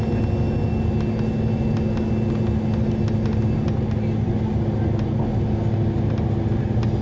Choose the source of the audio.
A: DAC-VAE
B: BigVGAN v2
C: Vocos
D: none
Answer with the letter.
D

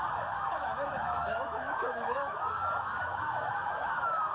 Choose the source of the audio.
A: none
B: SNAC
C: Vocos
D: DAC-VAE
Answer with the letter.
D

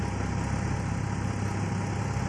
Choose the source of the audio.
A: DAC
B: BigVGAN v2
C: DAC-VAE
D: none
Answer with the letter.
D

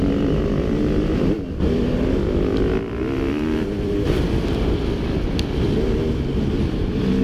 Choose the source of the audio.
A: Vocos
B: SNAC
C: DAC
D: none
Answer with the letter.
D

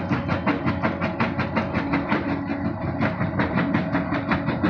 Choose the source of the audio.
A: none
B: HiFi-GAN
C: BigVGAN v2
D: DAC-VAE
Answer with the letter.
A